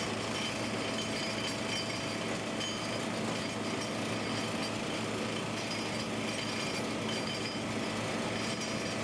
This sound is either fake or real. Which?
real